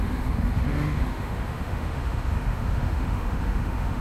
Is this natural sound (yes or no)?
no